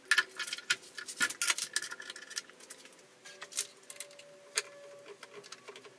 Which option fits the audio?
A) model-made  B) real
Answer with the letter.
B